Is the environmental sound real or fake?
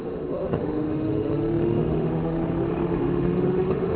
fake